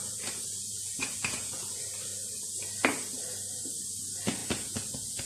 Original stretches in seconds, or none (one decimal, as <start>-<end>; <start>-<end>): 0.0-0.7; 1.8-4.4